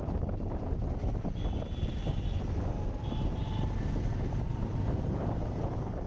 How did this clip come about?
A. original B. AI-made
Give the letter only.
A